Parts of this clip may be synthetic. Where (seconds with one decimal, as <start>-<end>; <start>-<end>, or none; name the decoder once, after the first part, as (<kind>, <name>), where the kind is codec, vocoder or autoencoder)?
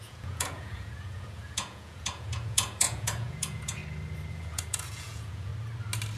0.0-3.8 (vocoder, Vocos); 4.3-5.5